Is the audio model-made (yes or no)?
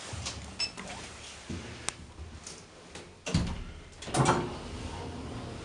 no